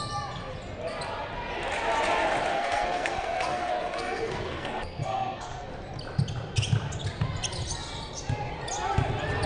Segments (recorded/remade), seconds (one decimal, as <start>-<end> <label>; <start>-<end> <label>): 0.0-2.5 recorded; 2.5-5.7 remade; 5.7-9.5 recorded